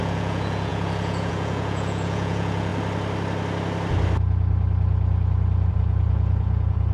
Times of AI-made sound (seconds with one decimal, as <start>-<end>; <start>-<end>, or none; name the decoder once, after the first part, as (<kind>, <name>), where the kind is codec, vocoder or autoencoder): 0.0-2.7 (vocoder, Vocos); 5.7-6.9